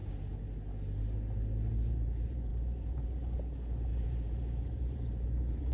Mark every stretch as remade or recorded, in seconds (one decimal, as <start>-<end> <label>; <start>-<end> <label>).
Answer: 0.0-1.9 recorded; 1.9-5.7 remade